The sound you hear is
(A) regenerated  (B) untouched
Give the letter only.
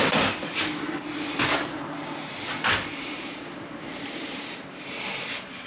B